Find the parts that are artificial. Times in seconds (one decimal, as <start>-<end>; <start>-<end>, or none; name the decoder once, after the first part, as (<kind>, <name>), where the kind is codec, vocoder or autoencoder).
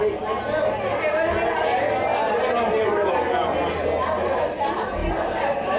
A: 5.0-5.8 (vocoder, BigVGAN v2)